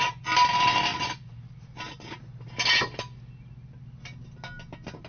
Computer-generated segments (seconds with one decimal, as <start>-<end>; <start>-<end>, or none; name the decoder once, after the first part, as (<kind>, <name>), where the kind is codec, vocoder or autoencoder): none